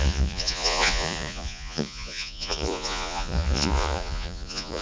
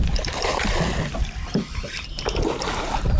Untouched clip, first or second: second